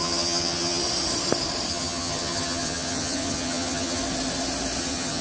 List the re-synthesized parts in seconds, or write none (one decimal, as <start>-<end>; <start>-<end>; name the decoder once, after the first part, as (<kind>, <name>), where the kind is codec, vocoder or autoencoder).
0.0-0.8 (vocoder, HiFi-GAN); 1.7-4.0; 4.8-5.2